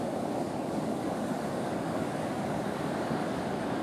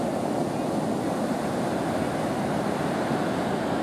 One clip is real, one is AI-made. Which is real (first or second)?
second